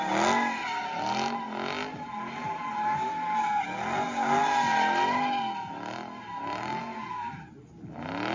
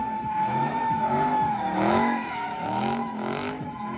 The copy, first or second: second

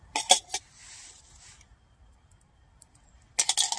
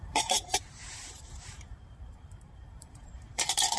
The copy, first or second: second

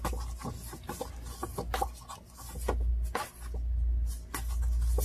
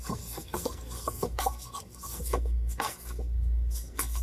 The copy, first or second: second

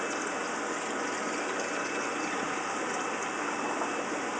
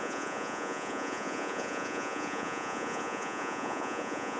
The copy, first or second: second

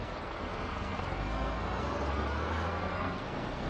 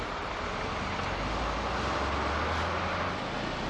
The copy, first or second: first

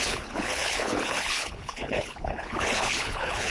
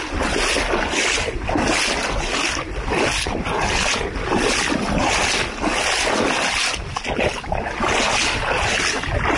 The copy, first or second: first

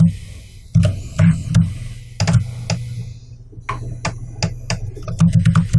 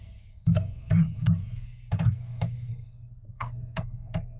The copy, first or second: second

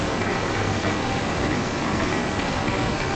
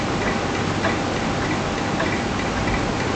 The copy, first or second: first